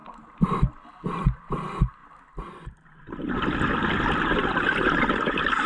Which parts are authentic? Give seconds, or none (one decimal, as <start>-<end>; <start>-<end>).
2.0-2.5; 4.4-5.7